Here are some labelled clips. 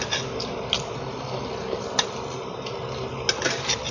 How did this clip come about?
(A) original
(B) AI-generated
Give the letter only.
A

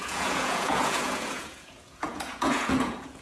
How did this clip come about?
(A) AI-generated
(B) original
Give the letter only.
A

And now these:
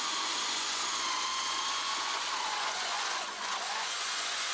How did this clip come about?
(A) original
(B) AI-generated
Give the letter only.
B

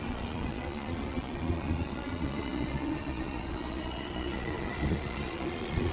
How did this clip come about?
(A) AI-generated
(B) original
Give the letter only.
A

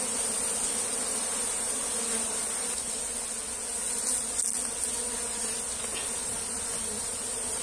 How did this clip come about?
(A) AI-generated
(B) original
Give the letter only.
B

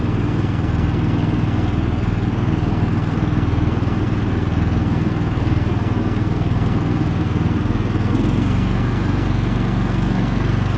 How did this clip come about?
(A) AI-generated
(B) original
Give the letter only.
A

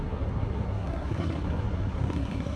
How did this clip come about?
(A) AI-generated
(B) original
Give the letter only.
A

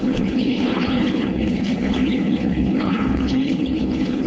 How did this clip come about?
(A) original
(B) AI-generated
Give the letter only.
B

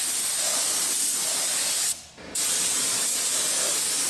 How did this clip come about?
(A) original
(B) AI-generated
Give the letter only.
A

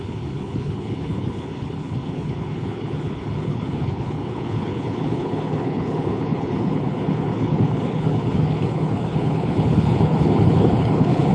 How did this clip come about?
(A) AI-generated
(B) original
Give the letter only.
A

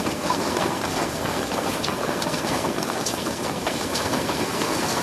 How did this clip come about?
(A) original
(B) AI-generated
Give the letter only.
B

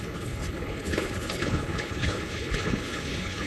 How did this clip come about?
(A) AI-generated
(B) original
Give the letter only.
A